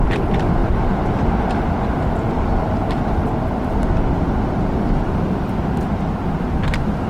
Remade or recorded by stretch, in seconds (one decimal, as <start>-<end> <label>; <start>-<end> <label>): 0.0-7.1 recorded